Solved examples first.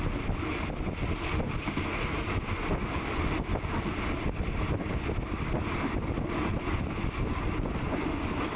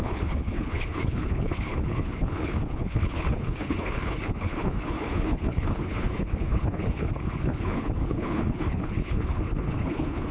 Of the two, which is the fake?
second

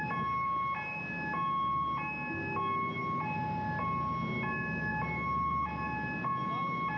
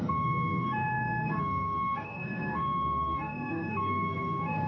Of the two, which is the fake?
second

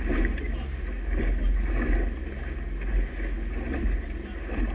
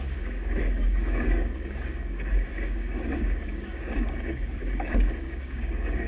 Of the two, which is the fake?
second